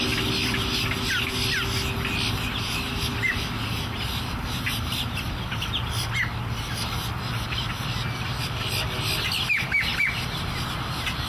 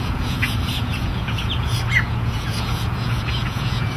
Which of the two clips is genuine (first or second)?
first